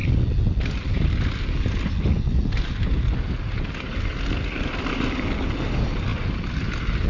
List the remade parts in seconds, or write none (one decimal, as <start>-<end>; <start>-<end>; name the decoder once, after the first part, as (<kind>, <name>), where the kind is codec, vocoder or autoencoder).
none